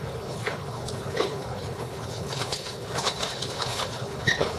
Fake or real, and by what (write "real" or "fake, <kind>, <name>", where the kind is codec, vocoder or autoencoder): fake, codec, HILCodec